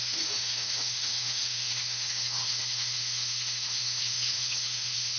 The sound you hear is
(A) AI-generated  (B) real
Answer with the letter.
A